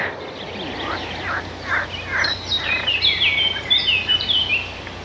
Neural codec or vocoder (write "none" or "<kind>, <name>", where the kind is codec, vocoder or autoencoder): none